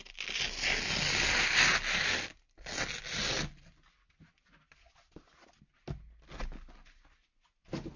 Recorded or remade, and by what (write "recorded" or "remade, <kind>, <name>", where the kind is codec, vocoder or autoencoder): recorded